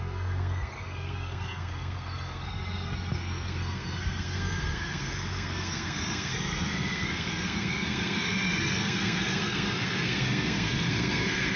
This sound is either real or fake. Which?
fake